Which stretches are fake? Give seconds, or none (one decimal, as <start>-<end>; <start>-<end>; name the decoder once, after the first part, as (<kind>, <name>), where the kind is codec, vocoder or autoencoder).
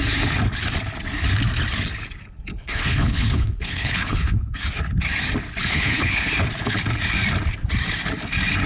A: 2.5-4.6 (codec, HILCodec); 5.6-6.3